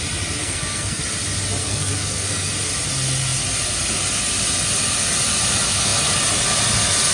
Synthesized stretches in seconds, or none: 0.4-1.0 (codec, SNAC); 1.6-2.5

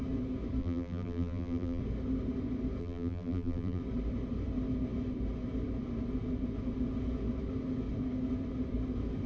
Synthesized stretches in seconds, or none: 0.6-1.8 (vocoder, BigVGAN v2); 2.8-3.8

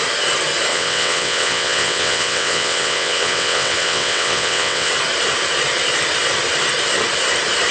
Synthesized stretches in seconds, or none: 0.7-4.9 (vocoder, WaveNeXt)